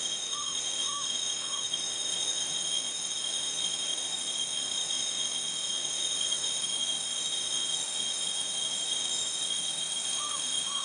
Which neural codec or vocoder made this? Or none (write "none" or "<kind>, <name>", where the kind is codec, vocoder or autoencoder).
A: autoencoder, DAC-VAE